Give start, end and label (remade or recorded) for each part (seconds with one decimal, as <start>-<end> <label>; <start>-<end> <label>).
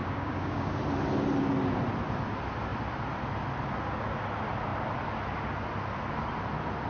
0.0-0.8 remade; 0.8-6.9 recorded